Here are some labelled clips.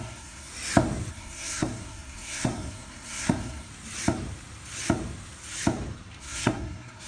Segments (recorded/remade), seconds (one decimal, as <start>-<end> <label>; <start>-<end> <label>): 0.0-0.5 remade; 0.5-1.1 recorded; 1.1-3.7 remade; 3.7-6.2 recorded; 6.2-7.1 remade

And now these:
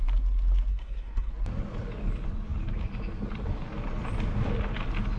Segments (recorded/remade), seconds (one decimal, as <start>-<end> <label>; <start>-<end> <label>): 0.0-0.7 recorded; 0.7-1.3 remade; 1.3-5.2 recorded

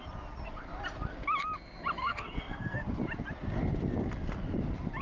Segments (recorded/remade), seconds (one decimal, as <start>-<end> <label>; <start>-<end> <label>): 0.0-2.0 recorded; 2.0-2.8 remade; 2.8-5.0 recorded

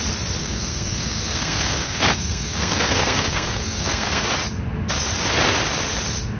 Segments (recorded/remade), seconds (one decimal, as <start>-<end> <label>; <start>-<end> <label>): 0.0-0.4 recorded; 0.4-4.2 remade; 4.2-6.4 recorded

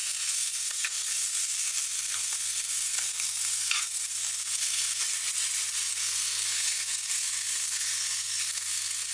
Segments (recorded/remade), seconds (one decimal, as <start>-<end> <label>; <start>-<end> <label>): 0.0-5.0 remade; 5.0-5.9 recorded; 5.9-9.1 remade